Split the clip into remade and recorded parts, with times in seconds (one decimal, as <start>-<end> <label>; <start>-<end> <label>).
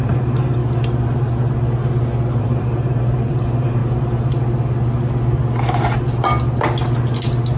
0.0-0.6 remade; 0.6-2.4 recorded; 2.4-3.8 remade; 3.8-7.6 recorded